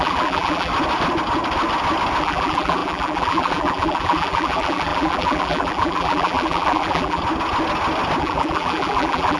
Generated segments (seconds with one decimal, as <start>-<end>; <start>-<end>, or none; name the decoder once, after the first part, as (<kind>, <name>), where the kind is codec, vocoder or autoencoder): 0.0-0.7 (vocoder, BigVGAN v2); 2.2-7.2; 8.2-9.4